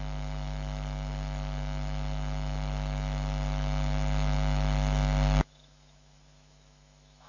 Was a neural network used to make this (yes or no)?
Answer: yes